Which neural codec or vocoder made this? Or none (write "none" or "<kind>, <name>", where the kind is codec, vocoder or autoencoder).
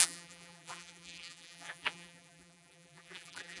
vocoder, BigVGAN v2